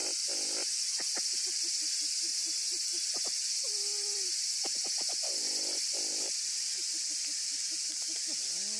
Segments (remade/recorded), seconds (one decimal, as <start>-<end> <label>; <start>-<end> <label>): 0.0-2.3 remade; 2.3-5.4 recorded; 5.4-6.9 remade; 6.9-7.7 recorded; 7.7-8.8 remade